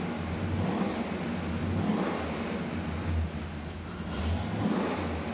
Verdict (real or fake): real